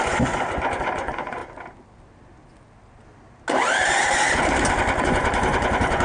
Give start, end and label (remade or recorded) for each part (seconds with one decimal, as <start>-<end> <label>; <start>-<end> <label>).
0.0-1.4 remade; 1.4-5.0 recorded; 5.0-6.0 remade